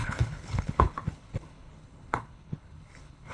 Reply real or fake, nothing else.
fake